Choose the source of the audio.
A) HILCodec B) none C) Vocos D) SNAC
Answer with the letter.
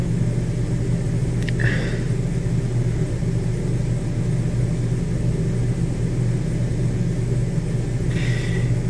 B